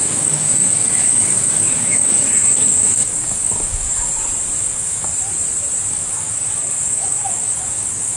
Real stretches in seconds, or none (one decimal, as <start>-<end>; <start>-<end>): 4.1-4.6; 5.1-5.9